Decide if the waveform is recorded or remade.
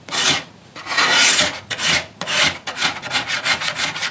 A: remade